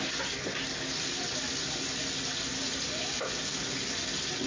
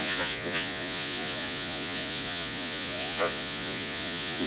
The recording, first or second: first